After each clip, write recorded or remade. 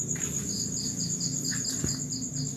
recorded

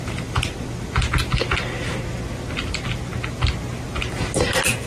recorded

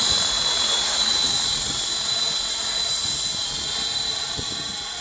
remade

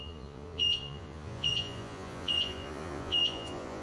remade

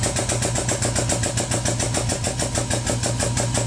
recorded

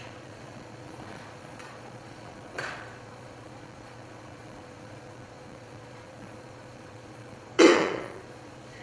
remade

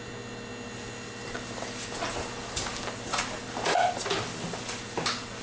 recorded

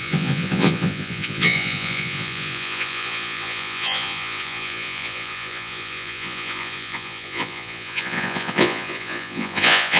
remade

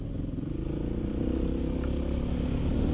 recorded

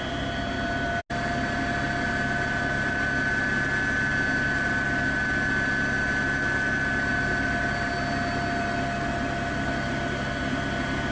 recorded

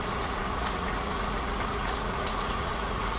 remade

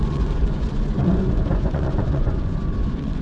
remade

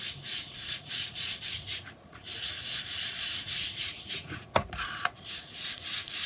remade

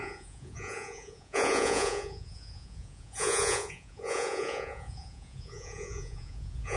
remade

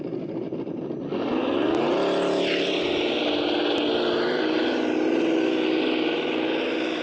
recorded